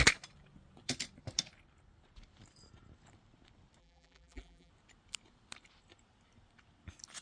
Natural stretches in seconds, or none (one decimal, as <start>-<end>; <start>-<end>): 0.0-3.8; 4.7-7.2